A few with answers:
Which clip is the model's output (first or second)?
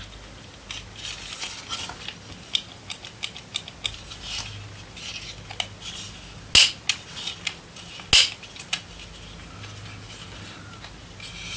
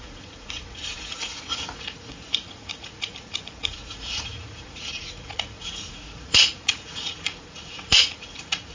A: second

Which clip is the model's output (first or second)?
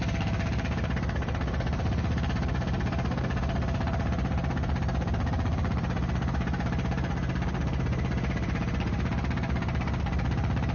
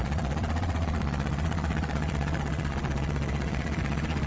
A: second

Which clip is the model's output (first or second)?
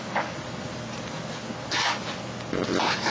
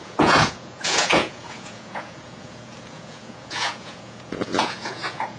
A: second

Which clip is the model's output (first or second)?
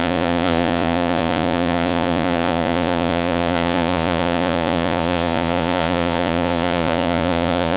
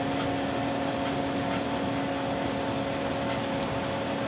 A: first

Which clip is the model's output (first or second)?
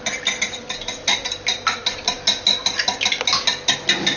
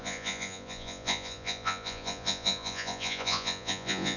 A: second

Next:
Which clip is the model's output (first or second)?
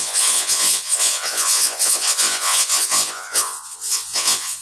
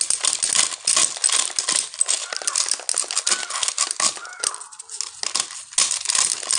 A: first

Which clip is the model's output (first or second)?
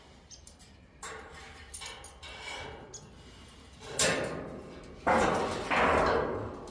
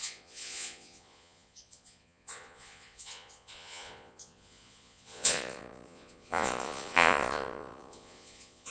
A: second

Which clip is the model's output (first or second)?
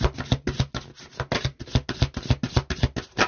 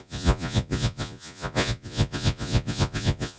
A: second